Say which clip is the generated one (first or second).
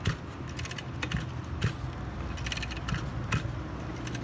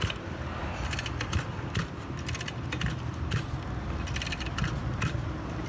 second